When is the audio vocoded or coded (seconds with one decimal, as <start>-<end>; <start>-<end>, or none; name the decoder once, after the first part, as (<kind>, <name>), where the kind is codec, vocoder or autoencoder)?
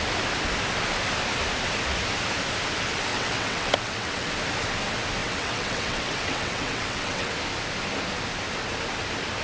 3.1-4.3 (vocoder, WaveNeXt); 5.2-7.3